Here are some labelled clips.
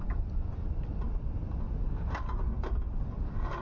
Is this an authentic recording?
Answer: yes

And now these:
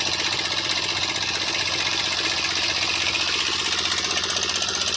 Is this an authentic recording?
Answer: yes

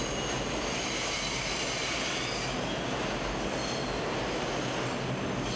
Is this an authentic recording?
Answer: yes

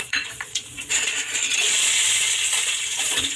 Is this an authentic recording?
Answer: no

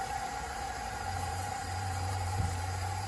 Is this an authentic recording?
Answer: no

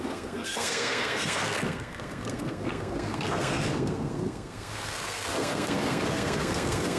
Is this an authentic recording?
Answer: no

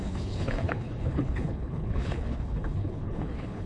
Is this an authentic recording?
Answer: no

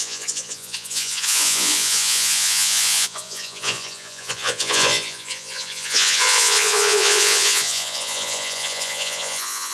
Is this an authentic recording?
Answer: no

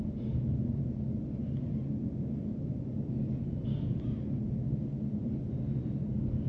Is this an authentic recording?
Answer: yes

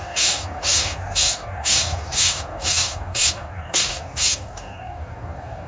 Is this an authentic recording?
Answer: no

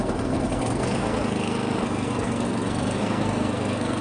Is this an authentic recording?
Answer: no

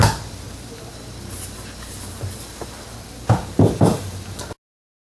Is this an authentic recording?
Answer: yes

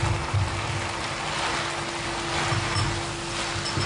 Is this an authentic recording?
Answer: yes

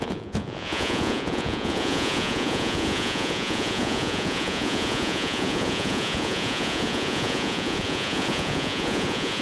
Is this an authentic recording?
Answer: no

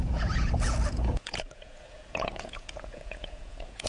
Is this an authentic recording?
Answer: no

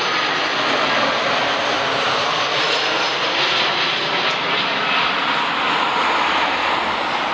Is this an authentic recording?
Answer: yes